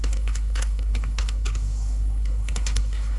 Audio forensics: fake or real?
fake